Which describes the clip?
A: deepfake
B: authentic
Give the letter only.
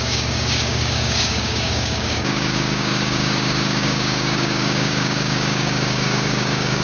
A